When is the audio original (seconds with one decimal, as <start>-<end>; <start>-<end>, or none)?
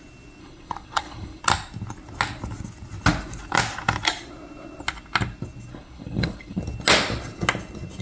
0.0-0.4; 1.4-5.7; 6.6-8.0